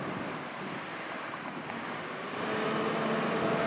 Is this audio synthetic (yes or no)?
no